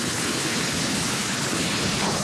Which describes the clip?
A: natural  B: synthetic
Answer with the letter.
B